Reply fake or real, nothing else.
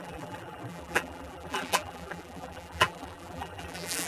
fake